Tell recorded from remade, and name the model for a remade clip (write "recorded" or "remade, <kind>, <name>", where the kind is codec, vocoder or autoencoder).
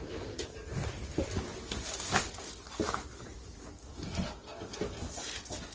recorded